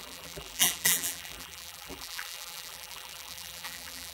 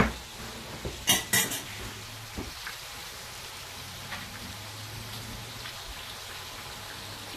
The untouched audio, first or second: second